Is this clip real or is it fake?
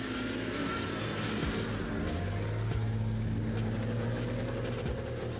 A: real